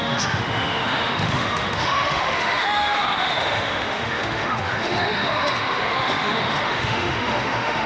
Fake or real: fake